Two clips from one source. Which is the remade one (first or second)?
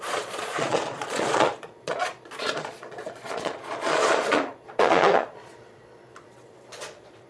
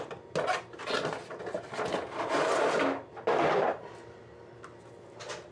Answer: first